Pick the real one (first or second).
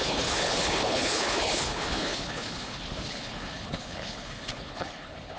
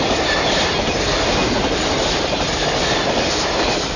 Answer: second